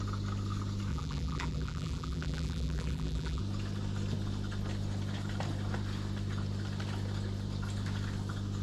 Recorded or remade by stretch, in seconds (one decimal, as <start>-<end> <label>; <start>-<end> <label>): 0.0-0.9 recorded; 0.9-3.4 remade; 3.4-8.6 recorded